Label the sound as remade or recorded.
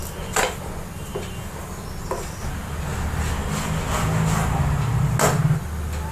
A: recorded